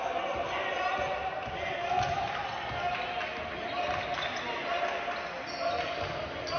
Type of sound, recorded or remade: recorded